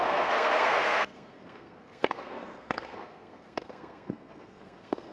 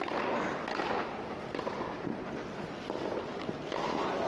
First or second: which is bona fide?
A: second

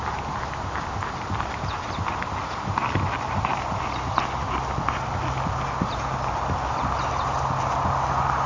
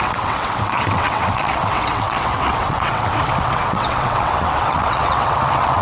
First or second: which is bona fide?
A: first